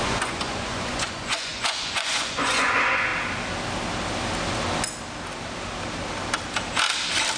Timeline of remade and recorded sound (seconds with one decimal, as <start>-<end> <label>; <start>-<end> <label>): 0.0-3.1 remade; 3.1-7.4 recorded